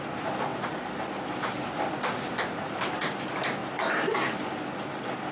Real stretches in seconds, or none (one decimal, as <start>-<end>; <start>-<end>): 0.0-5.3